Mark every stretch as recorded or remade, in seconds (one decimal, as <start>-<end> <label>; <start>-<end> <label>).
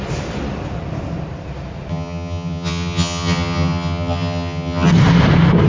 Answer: 0.0-1.9 recorded; 1.9-4.9 remade; 4.9-5.7 recorded